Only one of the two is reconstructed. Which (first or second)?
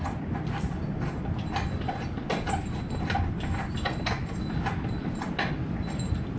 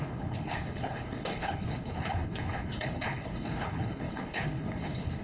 second